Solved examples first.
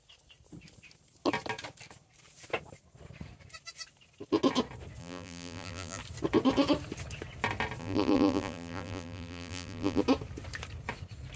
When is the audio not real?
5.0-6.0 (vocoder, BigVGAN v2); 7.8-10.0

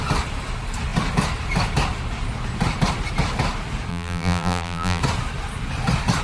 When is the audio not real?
3.9-5.0 (vocoder, BigVGAN v2)

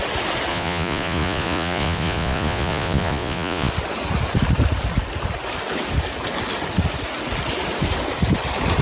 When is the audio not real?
0.5-3.7 (vocoder, Vocos)